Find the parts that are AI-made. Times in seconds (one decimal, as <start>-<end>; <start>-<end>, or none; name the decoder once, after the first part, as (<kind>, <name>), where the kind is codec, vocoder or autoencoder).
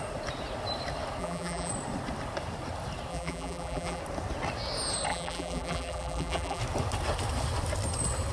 1.2-1.7 (vocoder, BigVGAN v2); 3.1-4.0; 5.1-6.6